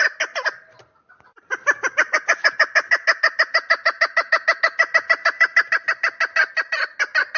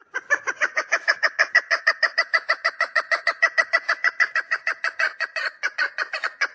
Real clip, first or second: first